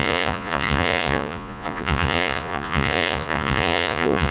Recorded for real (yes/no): no